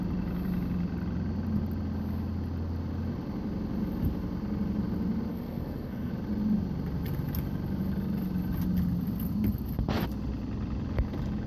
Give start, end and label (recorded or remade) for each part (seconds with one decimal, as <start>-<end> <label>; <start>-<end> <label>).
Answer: 0.0-5.3 recorded; 5.3-6.1 remade; 6.1-11.5 recorded